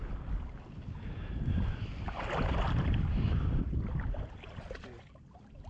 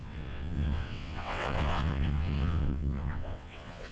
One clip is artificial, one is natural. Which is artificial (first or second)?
second